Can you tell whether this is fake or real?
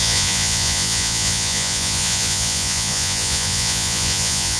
fake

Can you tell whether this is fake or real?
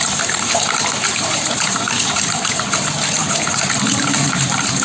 fake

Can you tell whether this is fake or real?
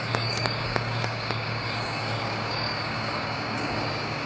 fake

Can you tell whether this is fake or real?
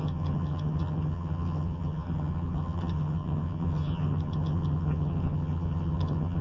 fake